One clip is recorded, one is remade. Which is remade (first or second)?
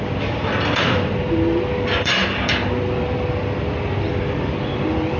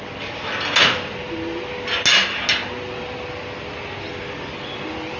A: first